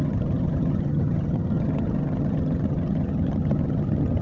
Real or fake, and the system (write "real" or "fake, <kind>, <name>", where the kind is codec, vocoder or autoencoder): fake, vocoder, HiFi-GAN